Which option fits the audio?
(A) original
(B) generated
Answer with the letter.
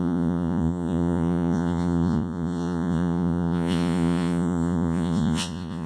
B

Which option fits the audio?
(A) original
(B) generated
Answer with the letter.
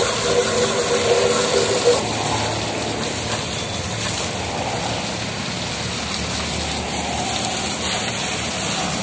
A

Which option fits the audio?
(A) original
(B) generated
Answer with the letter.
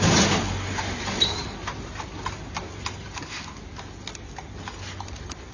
A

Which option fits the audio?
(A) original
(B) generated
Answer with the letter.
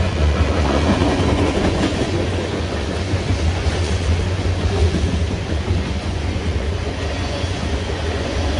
B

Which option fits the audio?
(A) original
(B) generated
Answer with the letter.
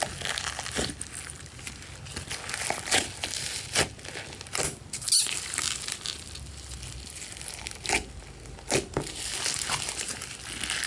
A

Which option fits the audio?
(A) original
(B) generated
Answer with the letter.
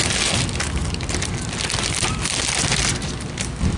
A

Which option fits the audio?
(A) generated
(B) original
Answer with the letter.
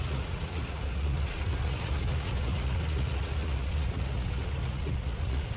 A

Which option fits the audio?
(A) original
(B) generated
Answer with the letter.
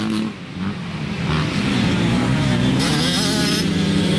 A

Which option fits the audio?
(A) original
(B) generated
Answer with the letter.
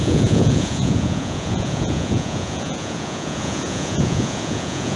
B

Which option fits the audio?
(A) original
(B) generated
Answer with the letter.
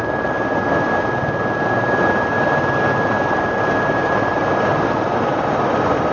A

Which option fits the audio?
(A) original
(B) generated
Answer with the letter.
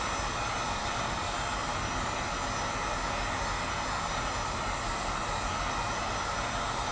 A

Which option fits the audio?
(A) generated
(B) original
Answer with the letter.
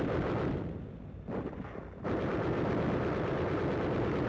B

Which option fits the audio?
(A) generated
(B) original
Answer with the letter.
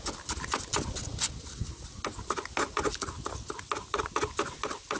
B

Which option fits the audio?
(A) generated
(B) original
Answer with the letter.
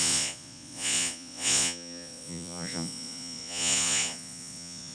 A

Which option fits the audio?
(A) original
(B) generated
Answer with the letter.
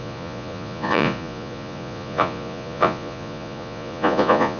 B